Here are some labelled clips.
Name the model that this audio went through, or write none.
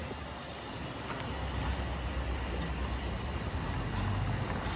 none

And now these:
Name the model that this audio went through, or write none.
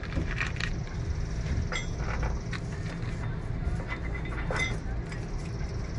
none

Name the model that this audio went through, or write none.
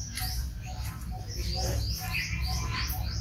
none